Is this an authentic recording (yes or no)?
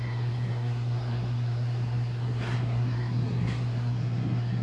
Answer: no